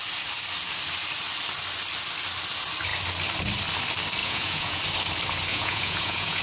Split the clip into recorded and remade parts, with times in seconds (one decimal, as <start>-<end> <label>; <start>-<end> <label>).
0.0-4.2 recorded; 4.2-4.8 remade; 4.8-5.5 recorded; 5.5-6.4 remade